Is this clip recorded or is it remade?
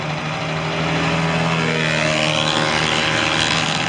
recorded